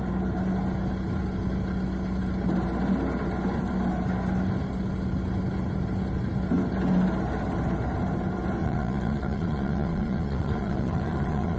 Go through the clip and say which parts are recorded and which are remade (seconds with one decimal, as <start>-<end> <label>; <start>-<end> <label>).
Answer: 0.0-8.6 recorded; 8.6-11.6 remade